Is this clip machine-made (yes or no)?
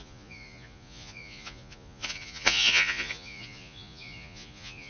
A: yes